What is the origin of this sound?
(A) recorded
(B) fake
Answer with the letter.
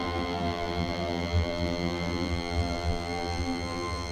B